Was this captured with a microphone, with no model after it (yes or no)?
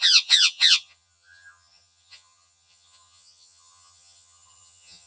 no